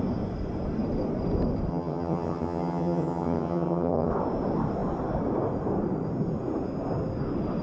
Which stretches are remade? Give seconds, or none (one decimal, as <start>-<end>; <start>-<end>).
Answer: 1.7-4.1